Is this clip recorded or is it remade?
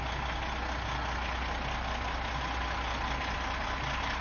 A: recorded